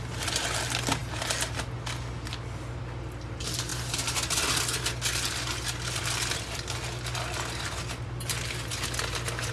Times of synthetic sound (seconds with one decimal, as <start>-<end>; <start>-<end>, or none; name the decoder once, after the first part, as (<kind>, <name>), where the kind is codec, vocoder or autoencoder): none